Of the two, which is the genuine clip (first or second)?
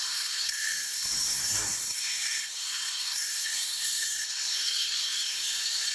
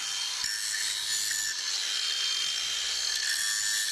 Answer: second